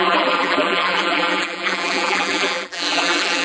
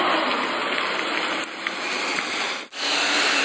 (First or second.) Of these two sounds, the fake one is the first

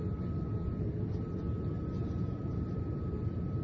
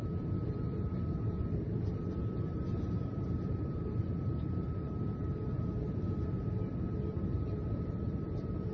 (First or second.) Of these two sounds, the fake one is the second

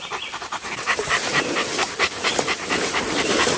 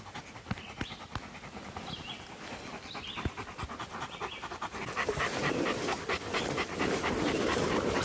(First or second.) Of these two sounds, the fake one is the first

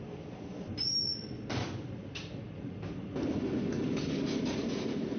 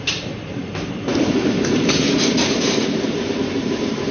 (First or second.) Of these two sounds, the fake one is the second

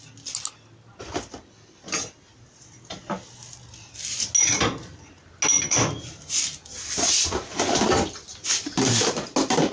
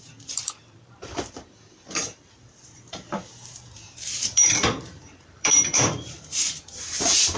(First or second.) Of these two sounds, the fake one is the second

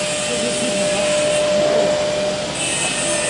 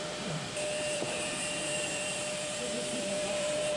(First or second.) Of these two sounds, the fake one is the second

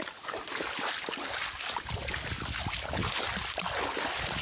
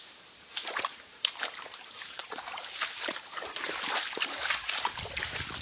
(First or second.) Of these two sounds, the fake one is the second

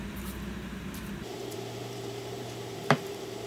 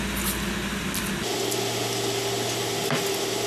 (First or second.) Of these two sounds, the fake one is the first